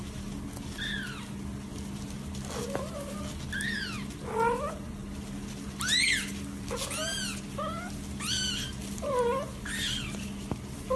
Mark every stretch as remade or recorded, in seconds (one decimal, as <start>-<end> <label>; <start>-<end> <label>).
0.0-11.0 recorded